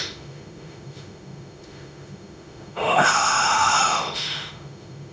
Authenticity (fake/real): fake